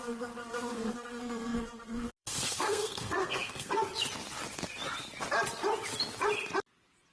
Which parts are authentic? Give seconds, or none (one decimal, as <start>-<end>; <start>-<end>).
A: 3.8-7.1